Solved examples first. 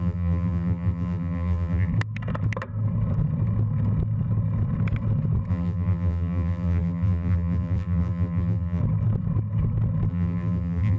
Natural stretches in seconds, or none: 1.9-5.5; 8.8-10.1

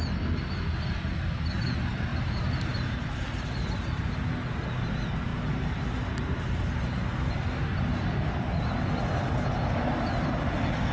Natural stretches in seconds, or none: 0.0-2.1; 4.1-5.3; 7.8-10.9

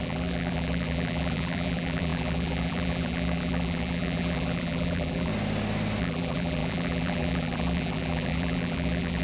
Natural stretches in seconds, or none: 5.3-6.0

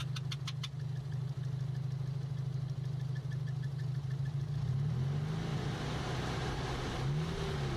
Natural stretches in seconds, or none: 0.0-5.5; 6.9-7.8

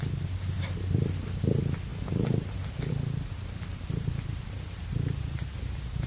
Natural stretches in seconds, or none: 0.0-1.9; 2.9-3.7; 4.8-6.1

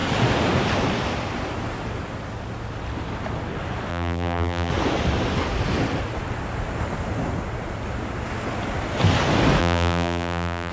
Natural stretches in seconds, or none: 0.0-3.9; 4.7-9.6

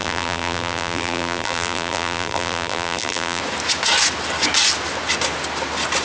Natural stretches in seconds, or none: 3.4-6.0